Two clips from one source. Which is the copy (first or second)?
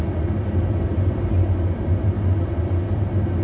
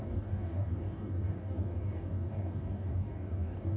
second